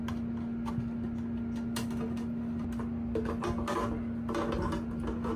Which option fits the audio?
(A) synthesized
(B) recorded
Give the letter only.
B